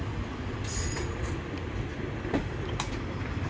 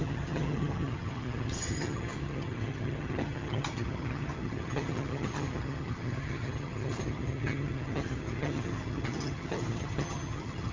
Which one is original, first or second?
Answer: first